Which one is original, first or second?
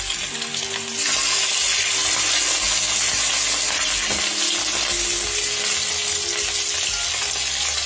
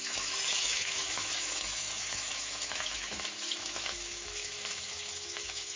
first